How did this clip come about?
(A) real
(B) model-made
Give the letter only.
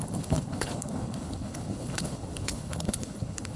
B